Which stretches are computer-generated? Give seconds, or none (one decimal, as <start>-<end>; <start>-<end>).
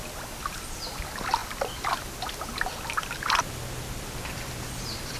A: none